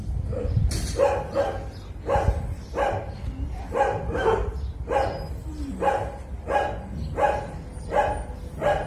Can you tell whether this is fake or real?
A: real